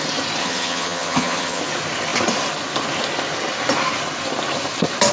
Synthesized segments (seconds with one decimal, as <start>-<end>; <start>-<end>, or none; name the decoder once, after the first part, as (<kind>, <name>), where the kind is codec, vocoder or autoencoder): 0.4-1.6 (vocoder, HiFi-GAN)

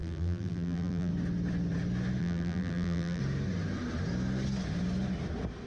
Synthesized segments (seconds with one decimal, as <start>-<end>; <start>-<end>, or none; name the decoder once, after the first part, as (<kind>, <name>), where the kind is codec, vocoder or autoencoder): 0.0-1.1 (vocoder, BigVGAN v2); 2.2-3.2

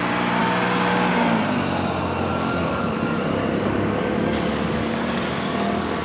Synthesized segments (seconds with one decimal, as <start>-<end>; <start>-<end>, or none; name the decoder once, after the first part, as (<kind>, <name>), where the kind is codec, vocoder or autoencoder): 2.3-6.0 (codec, DAC)

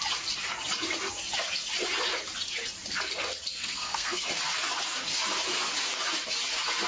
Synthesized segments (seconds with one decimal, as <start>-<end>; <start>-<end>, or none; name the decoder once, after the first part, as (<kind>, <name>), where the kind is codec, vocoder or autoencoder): 3.5-4.2 (codec, SNAC)

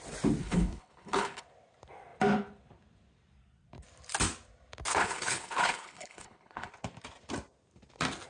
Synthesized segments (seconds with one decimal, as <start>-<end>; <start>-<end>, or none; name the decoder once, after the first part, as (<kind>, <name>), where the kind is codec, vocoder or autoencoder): 0.4-1.4 (codec, HILCodec); 5.0-6.7